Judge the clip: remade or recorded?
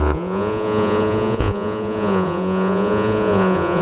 remade